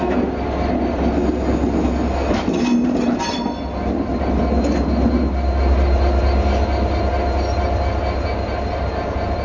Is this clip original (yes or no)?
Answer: yes